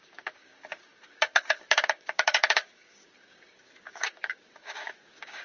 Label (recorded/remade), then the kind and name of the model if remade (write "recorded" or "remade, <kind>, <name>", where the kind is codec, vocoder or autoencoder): remade, codec, DAC